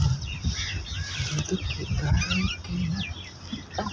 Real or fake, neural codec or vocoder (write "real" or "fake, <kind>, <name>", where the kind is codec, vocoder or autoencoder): real